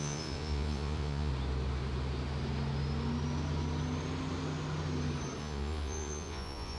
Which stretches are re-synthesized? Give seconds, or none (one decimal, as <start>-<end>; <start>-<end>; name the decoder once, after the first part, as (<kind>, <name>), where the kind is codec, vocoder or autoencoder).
0.0-1.3 (vocoder, Vocos); 5.4-6.8